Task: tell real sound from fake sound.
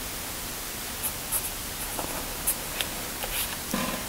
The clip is real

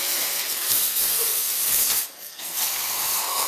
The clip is fake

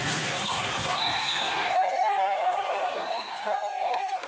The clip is fake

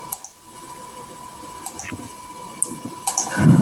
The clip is real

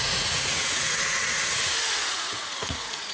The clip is fake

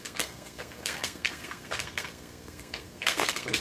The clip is fake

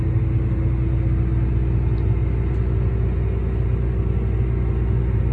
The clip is real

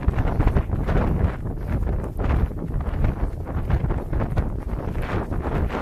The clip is real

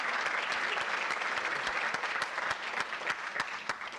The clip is fake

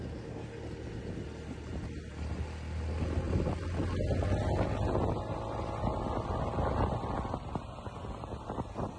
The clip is real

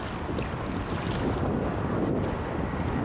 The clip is real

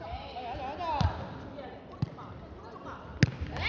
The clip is real